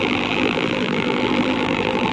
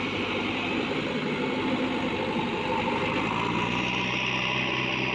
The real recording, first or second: second